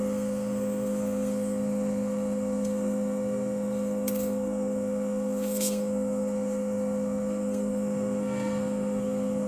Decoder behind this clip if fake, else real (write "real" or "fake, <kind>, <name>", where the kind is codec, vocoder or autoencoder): fake, codec, SNAC